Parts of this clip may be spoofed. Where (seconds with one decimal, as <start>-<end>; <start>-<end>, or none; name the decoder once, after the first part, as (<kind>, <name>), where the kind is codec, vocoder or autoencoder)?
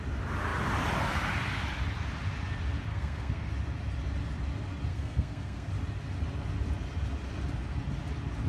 2.9-3.5 (codec, SNAC); 4.9-5.7